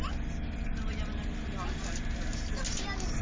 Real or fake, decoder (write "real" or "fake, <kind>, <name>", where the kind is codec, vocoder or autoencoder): real